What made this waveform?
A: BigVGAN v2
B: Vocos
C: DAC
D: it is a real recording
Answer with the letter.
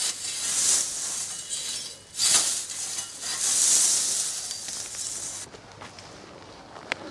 D